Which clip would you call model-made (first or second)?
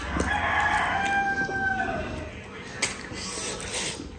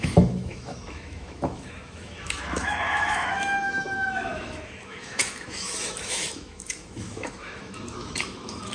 second